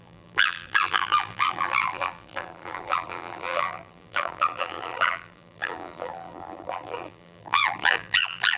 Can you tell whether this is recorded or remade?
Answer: remade